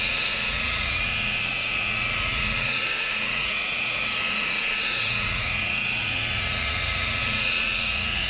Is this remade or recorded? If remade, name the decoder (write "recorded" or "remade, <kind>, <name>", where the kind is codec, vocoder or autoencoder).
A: remade, vocoder, Vocos